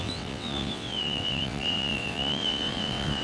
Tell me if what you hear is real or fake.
fake